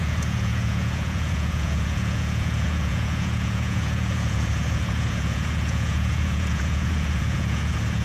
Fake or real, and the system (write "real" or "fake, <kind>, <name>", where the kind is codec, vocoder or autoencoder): fake, vocoder, Vocos